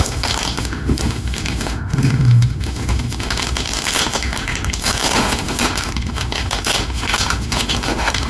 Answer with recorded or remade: remade